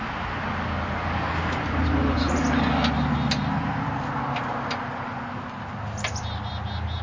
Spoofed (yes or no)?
no